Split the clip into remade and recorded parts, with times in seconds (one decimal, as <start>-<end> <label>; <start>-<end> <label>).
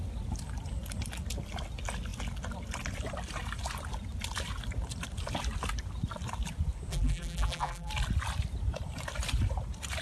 0.0-6.9 recorded; 6.9-7.9 remade; 7.9-10.0 recorded